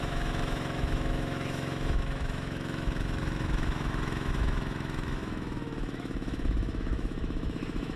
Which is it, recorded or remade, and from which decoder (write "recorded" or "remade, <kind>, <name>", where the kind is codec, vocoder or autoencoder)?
remade, autoencoder, DAC-VAE